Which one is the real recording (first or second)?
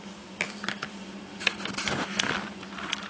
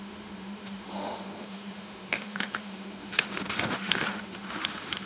first